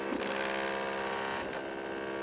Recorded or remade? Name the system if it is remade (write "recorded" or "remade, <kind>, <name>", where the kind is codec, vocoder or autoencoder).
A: recorded